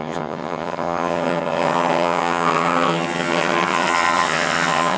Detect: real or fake fake